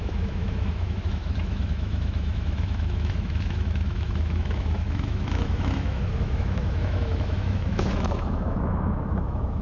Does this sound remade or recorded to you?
remade